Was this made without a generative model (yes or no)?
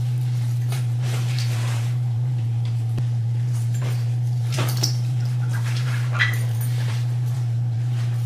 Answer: no